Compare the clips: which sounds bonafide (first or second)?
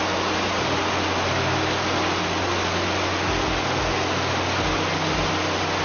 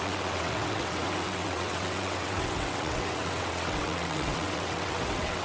first